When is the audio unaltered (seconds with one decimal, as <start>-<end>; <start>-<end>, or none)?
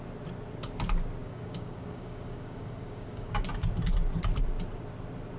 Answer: 0.0-1.2; 3.4-5.4